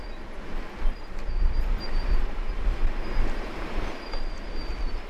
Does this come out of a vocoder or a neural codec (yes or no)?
no